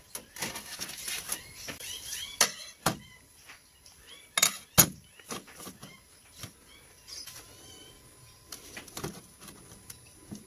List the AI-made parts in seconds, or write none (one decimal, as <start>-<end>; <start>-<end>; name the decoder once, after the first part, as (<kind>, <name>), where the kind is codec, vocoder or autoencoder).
none